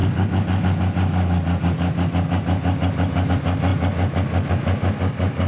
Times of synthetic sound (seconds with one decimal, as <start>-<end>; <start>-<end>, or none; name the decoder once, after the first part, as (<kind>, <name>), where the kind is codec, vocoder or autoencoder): none

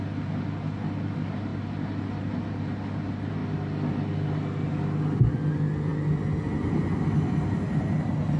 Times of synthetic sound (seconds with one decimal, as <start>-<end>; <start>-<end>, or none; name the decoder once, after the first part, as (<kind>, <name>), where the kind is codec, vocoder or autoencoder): none

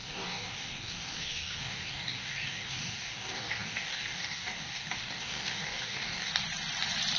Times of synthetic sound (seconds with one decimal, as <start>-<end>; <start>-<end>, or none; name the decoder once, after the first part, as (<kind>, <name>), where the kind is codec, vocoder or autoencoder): 0.0-6.3 (codec, DAC)